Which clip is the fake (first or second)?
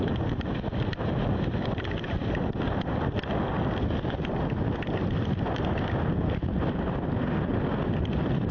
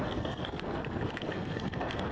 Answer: second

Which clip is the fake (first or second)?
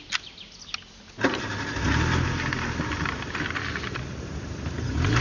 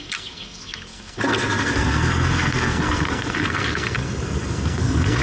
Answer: second